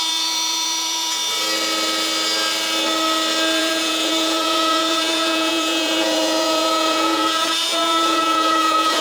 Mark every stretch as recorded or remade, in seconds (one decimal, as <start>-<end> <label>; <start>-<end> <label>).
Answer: 0.0-1.2 remade; 1.2-3.6 recorded; 3.6-9.0 remade